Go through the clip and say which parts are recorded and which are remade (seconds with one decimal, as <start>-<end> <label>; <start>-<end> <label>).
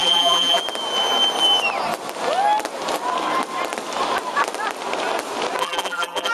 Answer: 0.0-0.6 remade; 0.6-5.6 recorded; 5.6-6.3 remade